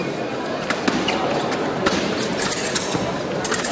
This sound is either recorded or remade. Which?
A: recorded